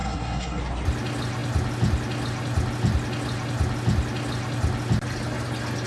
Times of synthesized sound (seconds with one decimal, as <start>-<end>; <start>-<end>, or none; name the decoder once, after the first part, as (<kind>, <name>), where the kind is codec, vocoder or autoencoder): 0.0-0.6 (codec, SNAC)